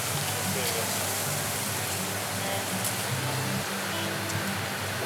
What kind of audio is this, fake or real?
real